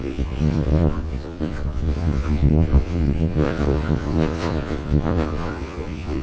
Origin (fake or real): fake